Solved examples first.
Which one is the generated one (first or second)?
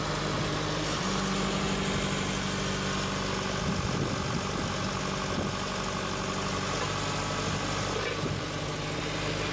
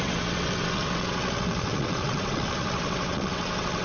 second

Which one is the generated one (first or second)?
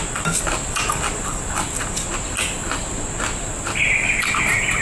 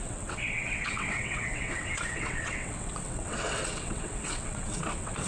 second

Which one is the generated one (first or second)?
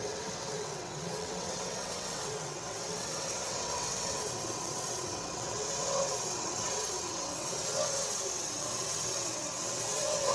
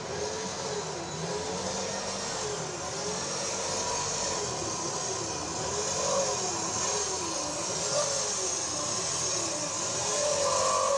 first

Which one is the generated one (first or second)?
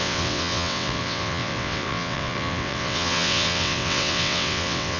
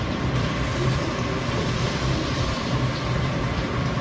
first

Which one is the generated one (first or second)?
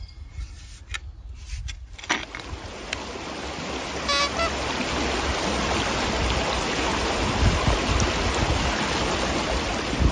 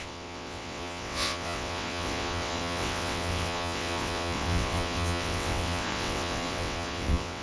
second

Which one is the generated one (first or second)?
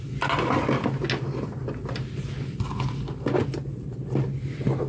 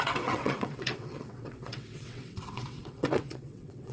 second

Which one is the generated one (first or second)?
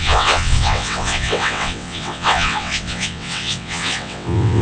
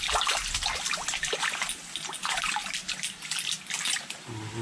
first